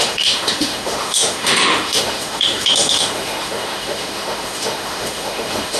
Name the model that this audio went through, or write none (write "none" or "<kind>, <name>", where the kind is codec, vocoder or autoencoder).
autoencoder, DAC-VAE